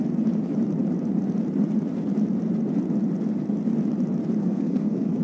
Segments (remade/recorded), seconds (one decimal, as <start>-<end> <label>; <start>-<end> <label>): 0.0-4.4 recorded; 4.4-5.2 remade

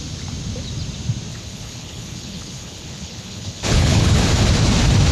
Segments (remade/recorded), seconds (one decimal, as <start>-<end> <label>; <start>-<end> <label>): 0.0-1.3 recorded; 1.3-4.2 remade; 4.2-5.1 recorded

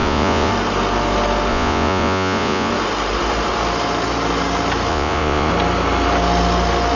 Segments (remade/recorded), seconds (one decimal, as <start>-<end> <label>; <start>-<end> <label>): 0.0-0.5 remade; 0.5-1.5 recorded; 1.5-2.7 remade; 2.7-4.9 recorded; 4.9-5.5 remade; 5.5-7.0 recorded

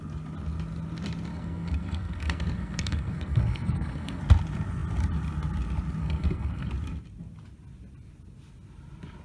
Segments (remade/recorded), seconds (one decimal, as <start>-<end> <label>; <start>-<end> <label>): 0.0-1.3 recorded; 1.3-4.2 remade; 4.2-6.0 recorded; 6.0-6.7 remade; 6.7-9.2 recorded